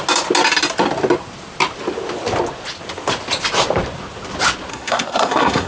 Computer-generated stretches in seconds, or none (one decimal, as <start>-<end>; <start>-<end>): 4.7-5.7